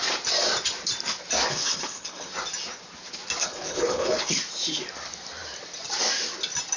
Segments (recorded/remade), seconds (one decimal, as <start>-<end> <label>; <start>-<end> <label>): 0.0-1.5 recorded; 1.5-2.3 remade; 2.3-3.4 recorded; 3.4-4.4 remade; 4.4-6.8 recorded